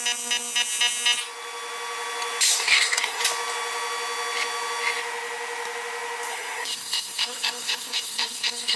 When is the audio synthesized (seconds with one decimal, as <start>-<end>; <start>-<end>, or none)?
2.5-3.2; 6.3-8.8

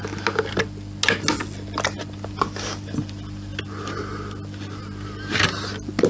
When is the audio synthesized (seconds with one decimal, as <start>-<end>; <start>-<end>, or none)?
none